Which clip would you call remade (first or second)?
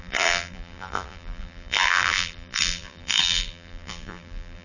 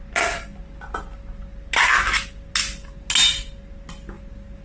first